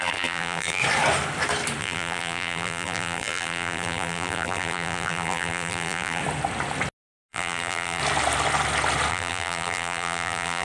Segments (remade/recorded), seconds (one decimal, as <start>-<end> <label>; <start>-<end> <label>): 0.0-0.8 remade; 0.8-1.8 recorded; 1.8-6.2 remade; 6.2-7.3 recorded; 7.3-8.0 remade; 8.0-9.1 recorded; 9.1-10.6 remade